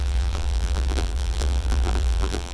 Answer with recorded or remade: remade